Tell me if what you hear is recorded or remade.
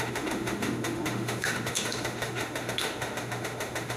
remade